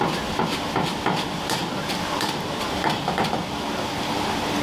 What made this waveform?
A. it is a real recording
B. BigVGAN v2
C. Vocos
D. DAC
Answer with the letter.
B